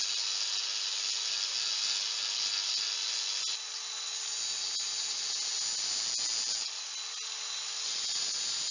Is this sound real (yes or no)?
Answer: yes